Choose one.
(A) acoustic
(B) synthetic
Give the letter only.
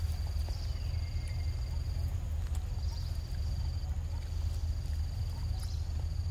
A